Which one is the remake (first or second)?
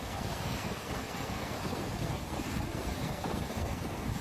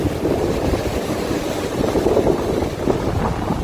first